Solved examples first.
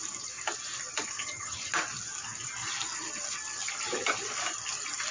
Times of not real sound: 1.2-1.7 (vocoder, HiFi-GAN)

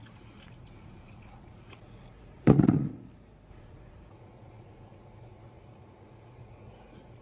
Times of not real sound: 0.0-2.9 (vocoder, Vocos); 3.5-7.2

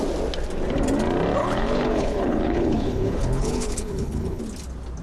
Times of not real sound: 1.4-4.4 (codec, HILCodec)

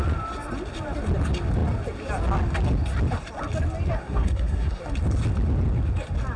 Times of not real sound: 4.0-4.8 (codec, SNAC)

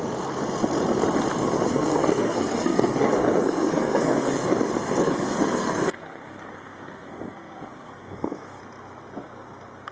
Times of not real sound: 1.7-4.5 (codec, SNAC); 5.0-8.6